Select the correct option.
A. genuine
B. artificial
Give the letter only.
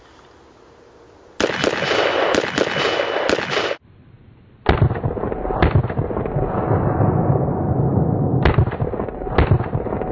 A